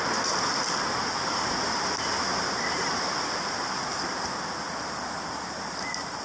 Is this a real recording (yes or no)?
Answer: no